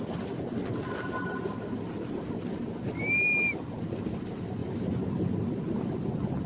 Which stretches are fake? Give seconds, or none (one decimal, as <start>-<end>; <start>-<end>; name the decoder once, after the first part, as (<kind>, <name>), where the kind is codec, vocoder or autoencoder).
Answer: none